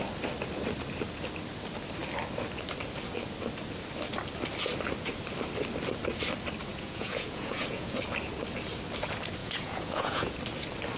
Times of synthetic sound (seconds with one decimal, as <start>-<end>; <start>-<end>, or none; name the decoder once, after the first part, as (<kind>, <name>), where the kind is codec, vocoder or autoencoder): 6.7-8.0 (vocoder, Vocos); 9.4-10.4